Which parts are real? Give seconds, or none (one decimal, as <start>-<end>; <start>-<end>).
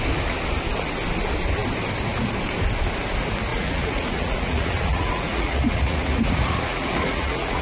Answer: 0.0-3.5